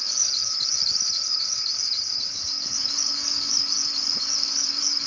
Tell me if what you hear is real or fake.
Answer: fake